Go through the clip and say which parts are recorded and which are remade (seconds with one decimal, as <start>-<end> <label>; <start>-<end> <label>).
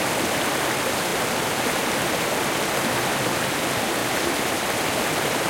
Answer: 0.0-5.5 recorded